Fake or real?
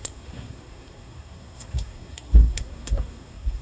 fake